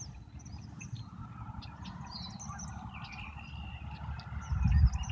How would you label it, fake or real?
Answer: real